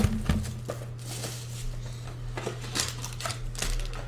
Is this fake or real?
real